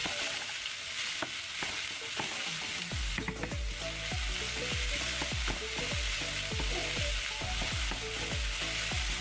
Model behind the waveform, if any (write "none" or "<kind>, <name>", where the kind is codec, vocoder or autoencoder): none